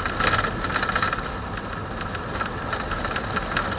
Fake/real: real